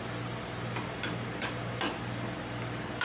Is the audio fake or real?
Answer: real